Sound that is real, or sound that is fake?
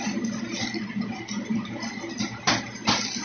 real